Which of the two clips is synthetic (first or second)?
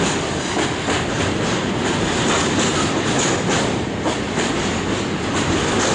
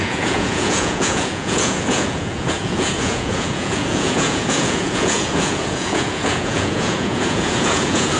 second